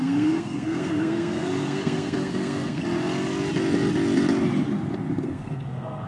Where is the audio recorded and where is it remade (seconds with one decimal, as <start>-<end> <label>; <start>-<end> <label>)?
0.0-2.8 remade; 2.8-5.1 recorded; 5.1-6.1 remade